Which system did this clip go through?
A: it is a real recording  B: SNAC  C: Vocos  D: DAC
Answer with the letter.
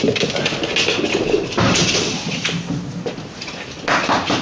A